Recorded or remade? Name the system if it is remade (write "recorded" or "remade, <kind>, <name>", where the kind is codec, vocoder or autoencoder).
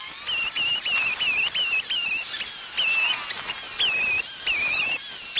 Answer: recorded